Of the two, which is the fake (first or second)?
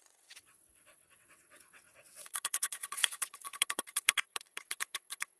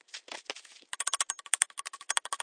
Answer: first